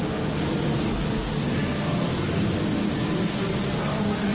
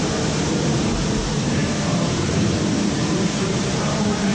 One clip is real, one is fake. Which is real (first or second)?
first